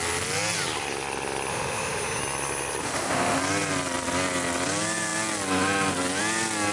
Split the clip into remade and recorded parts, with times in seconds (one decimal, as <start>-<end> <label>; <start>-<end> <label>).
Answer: 0.0-1.5 recorded; 1.5-2.2 remade; 2.2-2.8 recorded; 2.8-3.4 remade; 3.4-6.7 recorded